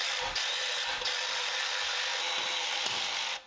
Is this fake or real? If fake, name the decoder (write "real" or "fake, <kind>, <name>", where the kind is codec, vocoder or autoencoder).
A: real